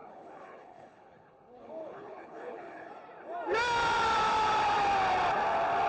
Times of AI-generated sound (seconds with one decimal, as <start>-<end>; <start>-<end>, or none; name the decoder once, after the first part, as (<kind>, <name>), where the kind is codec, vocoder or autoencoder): 0.0-2.9 (codec, HILCodec)